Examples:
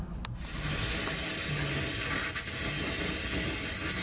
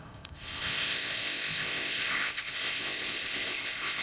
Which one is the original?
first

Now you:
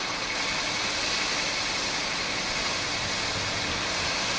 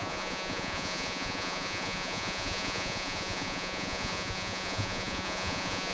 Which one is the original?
first